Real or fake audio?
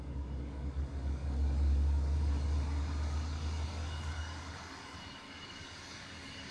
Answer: fake